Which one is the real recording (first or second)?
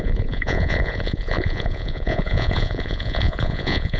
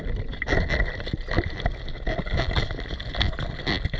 second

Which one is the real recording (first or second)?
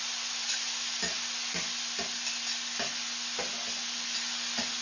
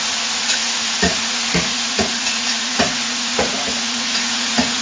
first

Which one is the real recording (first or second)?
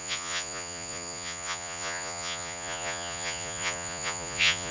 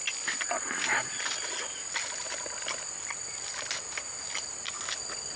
second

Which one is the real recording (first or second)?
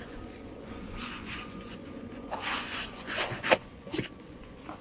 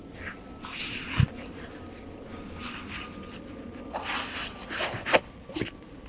second